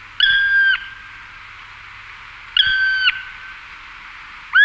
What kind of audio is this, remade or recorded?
recorded